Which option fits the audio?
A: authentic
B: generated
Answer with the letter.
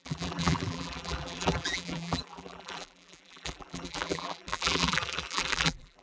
B